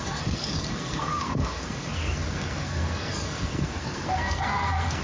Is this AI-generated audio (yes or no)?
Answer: yes